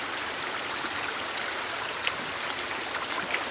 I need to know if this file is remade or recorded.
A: recorded